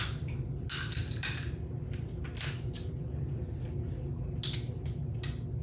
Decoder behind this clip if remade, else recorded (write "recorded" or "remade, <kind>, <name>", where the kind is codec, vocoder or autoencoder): recorded